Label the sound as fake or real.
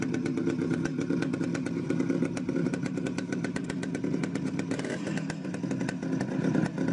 real